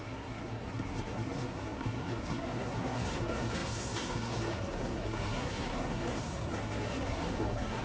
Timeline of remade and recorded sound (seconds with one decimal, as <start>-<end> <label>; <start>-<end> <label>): 0.0-7.8 remade